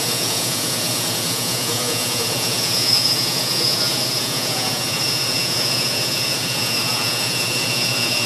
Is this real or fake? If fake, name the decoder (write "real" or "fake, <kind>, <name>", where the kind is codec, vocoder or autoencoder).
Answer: fake, vocoder, Vocos